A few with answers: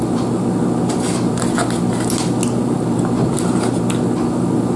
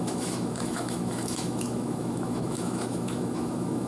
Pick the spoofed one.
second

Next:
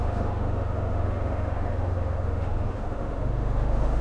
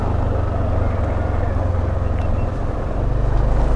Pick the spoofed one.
first